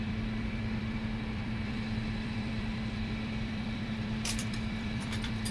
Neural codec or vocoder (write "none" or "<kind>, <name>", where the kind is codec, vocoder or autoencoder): vocoder, BigVGAN v2